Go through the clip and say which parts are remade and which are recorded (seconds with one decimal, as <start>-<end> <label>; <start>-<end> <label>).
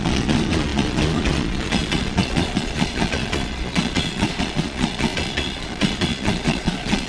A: 0.0-7.1 remade